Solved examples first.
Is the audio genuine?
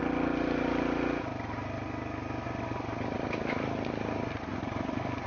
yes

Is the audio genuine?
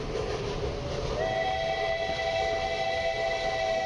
yes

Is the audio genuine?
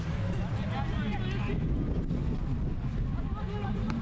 yes